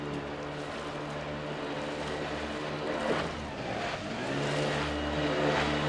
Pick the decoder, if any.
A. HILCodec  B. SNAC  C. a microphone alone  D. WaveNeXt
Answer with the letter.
C